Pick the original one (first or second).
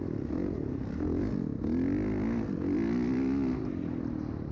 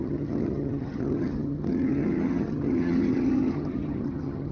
first